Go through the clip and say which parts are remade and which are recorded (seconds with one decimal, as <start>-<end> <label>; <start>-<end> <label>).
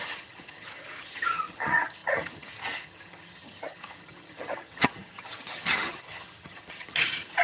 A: 0.0-7.4 remade